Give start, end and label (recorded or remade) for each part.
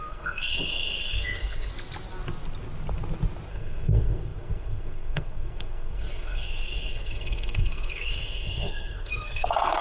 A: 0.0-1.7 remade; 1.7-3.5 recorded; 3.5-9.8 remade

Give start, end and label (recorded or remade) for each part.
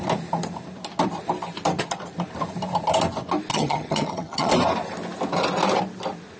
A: 0.0-3.5 recorded; 3.5-4.5 remade; 4.5-6.4 recorded